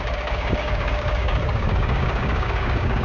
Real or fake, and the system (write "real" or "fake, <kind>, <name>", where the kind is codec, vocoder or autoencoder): fake, codec, DAC